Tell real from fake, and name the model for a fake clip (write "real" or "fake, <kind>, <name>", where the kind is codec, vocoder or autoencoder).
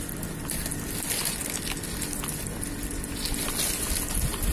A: real